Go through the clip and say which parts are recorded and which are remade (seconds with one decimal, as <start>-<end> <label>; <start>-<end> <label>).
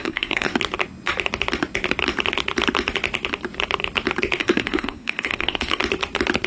0.0-0.5 remade; 0.5-4.4 recorded; 4.4-5.8 remade; 5.8-6.5 recorded